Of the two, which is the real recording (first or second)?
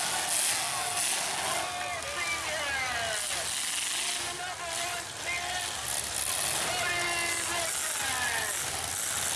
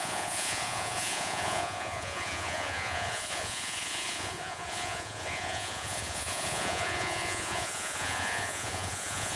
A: first